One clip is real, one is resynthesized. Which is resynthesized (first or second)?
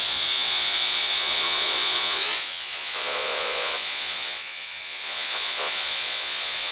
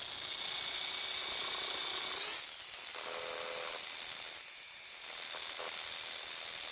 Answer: first